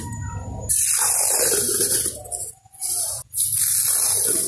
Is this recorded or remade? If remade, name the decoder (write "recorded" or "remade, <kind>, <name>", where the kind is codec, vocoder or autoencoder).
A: recorded